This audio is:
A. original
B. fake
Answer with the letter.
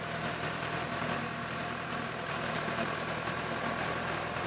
B